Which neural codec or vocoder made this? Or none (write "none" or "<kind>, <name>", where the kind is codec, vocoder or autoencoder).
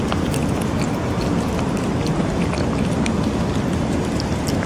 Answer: none